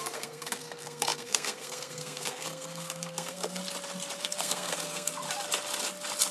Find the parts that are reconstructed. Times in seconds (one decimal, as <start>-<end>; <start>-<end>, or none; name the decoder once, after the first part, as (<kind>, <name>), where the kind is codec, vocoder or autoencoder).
0.0-3.6 (codec, SNAC); 4.2-5.1